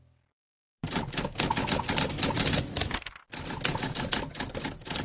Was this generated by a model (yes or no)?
no